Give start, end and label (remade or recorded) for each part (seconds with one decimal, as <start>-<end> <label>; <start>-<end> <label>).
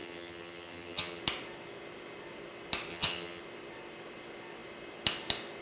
0.0-1.2 remade; 1.2-2.9 recorded; 2.9-3.4 remade; 3.4-5.6 recorded